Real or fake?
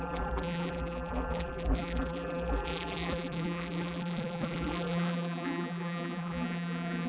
fake